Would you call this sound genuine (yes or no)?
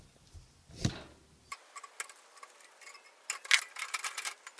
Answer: yes